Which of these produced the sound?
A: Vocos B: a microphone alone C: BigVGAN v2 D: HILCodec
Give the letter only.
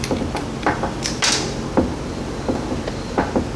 B